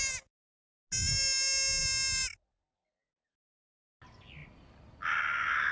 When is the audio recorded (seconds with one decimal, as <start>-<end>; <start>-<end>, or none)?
0.0-5.7